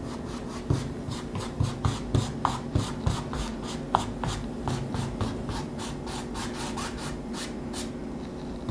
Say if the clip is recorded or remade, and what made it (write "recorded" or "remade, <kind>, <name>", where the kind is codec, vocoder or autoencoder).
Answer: recorded